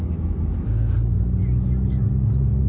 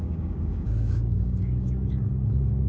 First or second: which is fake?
second